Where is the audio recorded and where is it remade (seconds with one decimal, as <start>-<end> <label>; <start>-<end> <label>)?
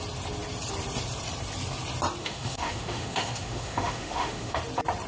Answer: 0.0-2.2 recorded; 2.2-4.6 remade; 4.6-5.1 recorded